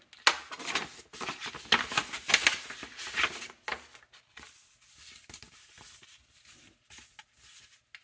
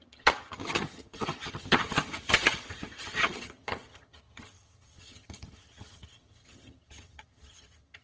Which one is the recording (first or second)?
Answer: first